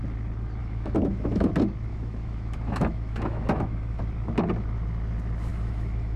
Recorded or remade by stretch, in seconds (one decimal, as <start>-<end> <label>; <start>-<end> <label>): 0.0-0.6 recorded; 0.6-1.5 remade; 1.5-1.9 recorded; 1.9-4.0 remade; 4.0-5.5 recorded; 5.5-6.2 remade